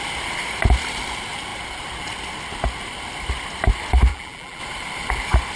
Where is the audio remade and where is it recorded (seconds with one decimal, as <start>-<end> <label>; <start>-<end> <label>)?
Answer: 0.0-4.1 recorded; 4.1-4.6 remade; 4.6-5.6 recorded